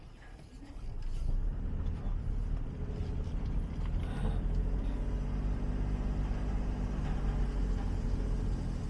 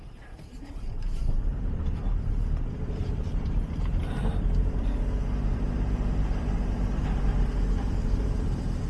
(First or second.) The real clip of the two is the first